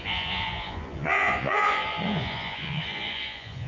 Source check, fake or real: fake